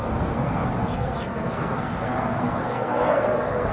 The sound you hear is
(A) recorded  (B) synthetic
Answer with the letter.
B